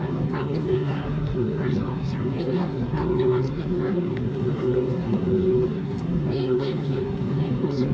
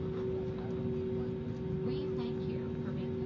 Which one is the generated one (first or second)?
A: first